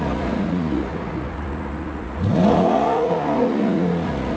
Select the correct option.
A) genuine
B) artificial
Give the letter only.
B